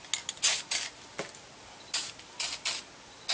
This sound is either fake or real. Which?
real